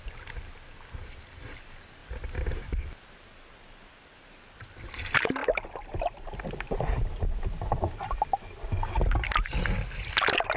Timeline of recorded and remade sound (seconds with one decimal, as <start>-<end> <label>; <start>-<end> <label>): 0.0-2.0 recorded; 2.0-3.3 remade; 3.3-10.6 recorded